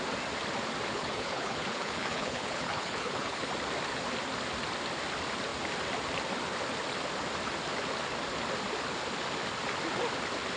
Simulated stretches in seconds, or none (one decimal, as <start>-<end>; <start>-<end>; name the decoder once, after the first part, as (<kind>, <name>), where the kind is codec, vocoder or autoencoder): 0.9-3.5 (codec, HILCodec)